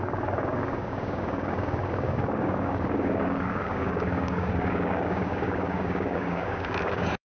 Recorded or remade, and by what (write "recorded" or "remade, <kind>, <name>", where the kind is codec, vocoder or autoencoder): remade, codec, DAC